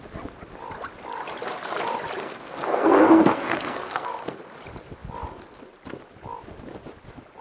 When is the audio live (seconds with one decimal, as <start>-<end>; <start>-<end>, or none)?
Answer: 0.0-2.2; 4.4-7.4